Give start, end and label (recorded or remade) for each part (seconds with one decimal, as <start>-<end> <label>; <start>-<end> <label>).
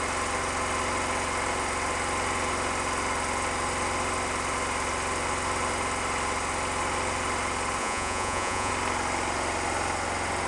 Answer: 0.0-7.8 recorded; 7.8-8.7 remade; 8.7-10.5 recorded